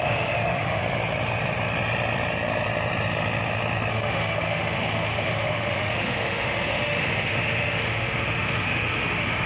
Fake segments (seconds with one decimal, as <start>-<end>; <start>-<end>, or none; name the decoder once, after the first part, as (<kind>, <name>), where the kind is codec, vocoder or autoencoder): 0.0-0.8 (autoencoder, DAC-VAE); 3.9-9.5